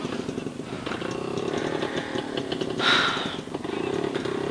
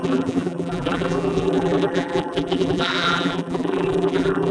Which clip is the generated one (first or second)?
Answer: second